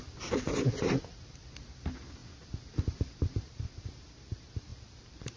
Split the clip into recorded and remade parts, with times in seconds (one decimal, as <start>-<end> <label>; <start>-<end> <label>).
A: 0.0-4.7 recorded; 4.7-5.4 remade